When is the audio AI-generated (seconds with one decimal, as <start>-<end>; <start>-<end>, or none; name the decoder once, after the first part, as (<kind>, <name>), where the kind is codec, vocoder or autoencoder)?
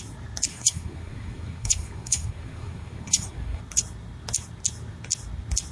0.5-3.6 (codec, SNAC)